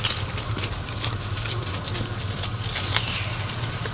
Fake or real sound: real